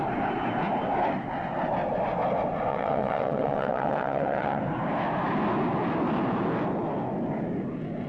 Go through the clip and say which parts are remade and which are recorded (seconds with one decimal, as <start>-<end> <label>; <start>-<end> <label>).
0.0-2.7 recorded; 2.7-4.6 remade; 4.6-8.1 recorded